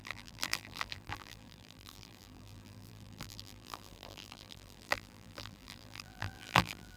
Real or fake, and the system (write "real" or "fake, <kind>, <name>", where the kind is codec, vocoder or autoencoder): fake, vocoder, BigVGAN v2